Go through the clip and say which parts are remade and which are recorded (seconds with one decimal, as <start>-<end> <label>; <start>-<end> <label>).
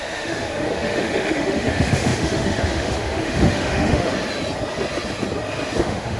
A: 0.0-4.1 remade; 4.1-5.8 recorded; 5.8-6.2 remade